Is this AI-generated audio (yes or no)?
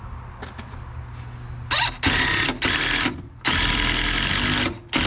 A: no